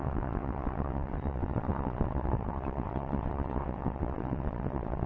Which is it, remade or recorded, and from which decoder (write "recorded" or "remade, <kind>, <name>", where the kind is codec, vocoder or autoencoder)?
remade, vocoder, WaveNeXt